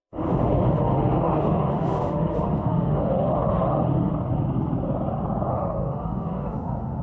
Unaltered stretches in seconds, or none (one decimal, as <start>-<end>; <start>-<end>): 4.1-5.5